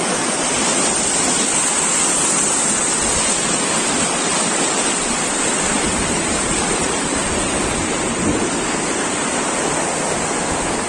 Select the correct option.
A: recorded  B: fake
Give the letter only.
A